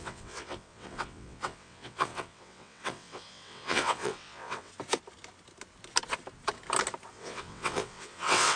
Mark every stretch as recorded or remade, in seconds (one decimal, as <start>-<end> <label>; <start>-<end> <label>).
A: 0.0-4.7 remade; 4.7-7.1 recorded; 7.1-8.6 remade